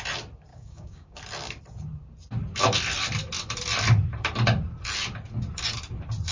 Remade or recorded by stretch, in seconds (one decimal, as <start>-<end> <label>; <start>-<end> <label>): 0.0-0.5 recorded; 0.5-1.2 remade; 1.2-6.3 recorded